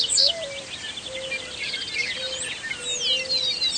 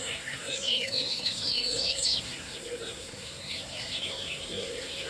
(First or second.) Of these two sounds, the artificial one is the second